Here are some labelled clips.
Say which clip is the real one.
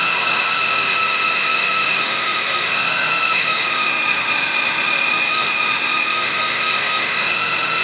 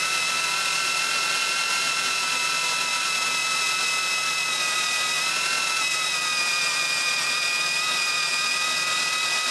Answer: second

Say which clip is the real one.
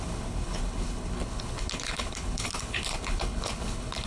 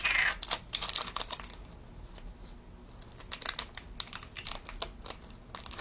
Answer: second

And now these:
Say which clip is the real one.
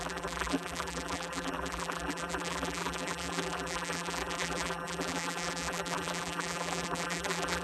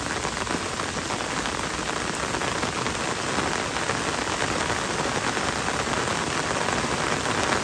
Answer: second